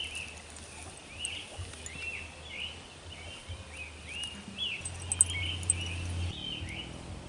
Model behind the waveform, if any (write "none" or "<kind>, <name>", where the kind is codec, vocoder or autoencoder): none